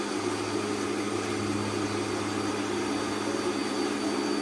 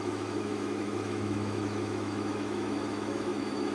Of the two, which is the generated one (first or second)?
second